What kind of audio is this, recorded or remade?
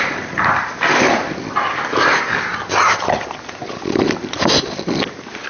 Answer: recorded